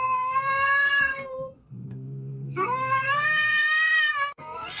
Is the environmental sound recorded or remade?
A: remade